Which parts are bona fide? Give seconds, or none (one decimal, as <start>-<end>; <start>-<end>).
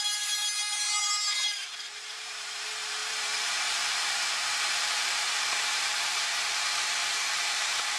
none